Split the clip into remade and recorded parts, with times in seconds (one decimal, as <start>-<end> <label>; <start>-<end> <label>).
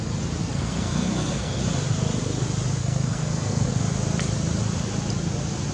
0.0-0.4 recorded; 0.4-1.6 remade; 1.6-2.8 recorded; 2.8-3.8 remade; 3.8-5.7 recorded